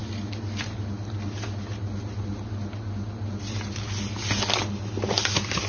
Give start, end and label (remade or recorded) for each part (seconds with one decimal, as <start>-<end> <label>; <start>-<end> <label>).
0.0-5.7 recorded